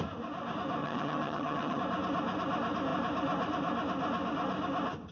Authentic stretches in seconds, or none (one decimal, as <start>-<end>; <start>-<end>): 0.0-0.8; 1.8-5.1